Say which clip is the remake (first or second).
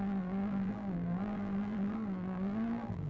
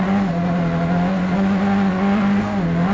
first